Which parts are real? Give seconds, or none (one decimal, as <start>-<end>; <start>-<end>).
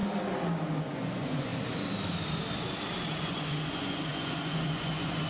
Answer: 0.0-0.8; 1.5-3.2